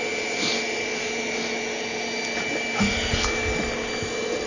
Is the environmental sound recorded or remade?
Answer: recorded